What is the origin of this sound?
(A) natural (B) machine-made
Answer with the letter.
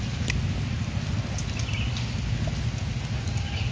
A